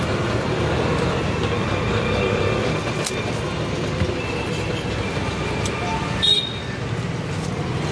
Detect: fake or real real